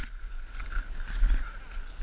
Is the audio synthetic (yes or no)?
no